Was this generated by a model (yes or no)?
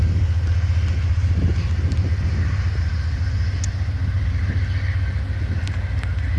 no